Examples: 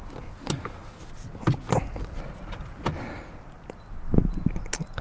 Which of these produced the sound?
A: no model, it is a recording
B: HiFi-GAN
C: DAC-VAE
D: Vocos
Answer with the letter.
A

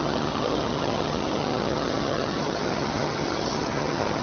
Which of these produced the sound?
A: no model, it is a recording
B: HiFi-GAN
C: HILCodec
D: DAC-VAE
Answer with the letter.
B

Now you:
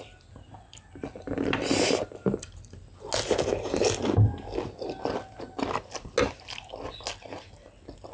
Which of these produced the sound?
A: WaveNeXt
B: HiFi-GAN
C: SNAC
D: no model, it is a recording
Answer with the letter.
D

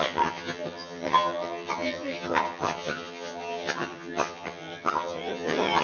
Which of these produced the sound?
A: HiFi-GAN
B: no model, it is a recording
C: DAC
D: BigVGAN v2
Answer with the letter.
A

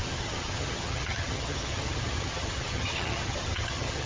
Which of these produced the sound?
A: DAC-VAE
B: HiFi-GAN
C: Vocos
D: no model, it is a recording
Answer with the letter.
B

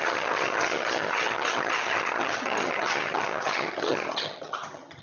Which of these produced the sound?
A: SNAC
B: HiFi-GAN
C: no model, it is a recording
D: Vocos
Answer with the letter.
B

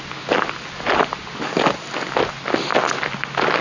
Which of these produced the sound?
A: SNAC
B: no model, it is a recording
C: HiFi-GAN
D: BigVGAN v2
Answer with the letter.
B